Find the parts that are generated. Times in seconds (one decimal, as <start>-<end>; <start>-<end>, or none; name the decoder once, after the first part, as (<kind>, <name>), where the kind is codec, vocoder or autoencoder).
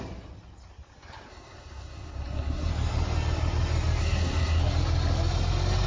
1.3-2.7 (codec, SNAC); 4.0-4.6